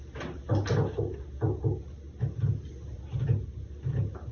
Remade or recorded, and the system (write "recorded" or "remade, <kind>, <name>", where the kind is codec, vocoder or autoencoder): recorded